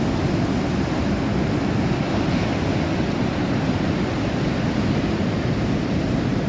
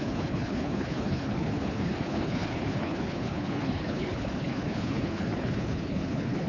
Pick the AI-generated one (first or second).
second